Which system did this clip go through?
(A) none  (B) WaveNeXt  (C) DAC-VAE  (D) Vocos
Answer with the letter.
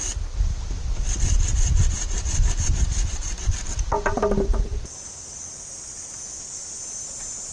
A